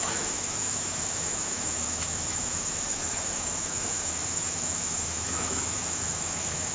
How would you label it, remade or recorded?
remade